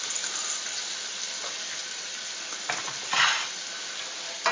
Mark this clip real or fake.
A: real